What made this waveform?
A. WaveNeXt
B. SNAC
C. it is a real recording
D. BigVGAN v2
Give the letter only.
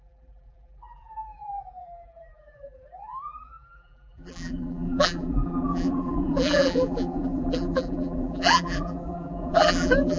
D